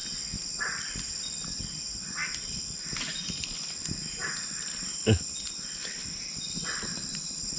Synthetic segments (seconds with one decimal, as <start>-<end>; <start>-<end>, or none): 0.6-2.2; 6.2-7.6